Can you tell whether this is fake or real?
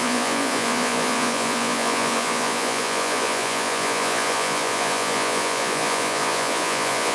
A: fake